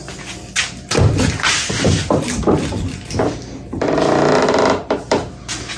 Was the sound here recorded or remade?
recorded